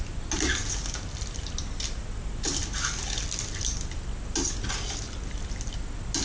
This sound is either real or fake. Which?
real